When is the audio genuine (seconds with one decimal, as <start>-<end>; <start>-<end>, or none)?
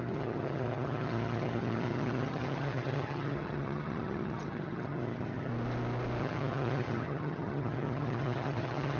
5.5-6.2